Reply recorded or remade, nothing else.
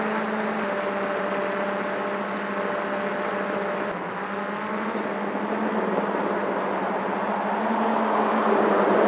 recorded